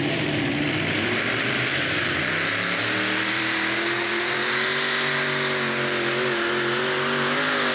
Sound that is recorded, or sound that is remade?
remade